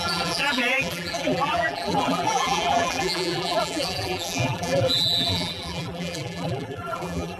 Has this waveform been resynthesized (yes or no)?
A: yes